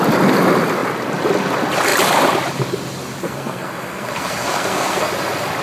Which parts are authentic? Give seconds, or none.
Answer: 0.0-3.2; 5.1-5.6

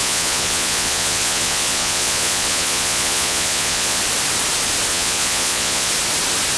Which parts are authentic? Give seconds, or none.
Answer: 4.0-4.9; 5.9-6.6

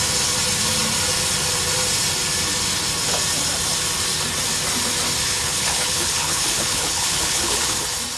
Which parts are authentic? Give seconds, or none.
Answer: 0.0-5.2; 7.7-8.2

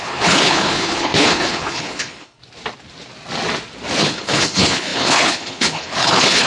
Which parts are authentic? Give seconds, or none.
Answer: 2.4-4.0

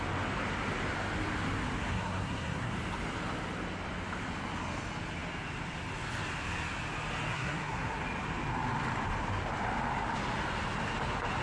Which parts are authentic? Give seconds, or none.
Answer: 0.0-1.8; 2.7-7.3; 8.0-11.4

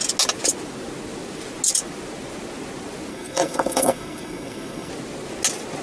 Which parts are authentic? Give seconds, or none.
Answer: 0.0-3.1; 4.9-5.8